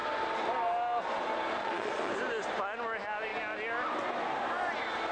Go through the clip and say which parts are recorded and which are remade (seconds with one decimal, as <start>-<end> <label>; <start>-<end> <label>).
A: 0.0-1.6 recorded; 1.6-2.1 remade; 2.1-5.1 recorded